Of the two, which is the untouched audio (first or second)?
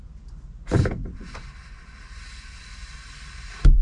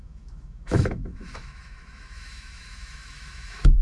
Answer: first